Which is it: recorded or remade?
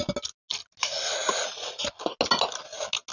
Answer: recorded